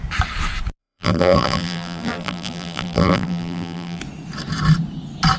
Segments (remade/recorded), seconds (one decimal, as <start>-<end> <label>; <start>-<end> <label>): 0.0-0.8 recorded; 0.8-4.0 remade; 4.0-5.4 recorded